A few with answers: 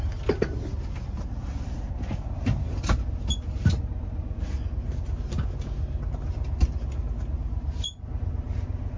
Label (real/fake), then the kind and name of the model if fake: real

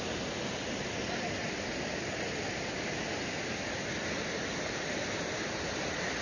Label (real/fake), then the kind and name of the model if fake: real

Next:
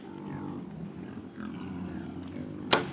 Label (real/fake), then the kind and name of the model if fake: real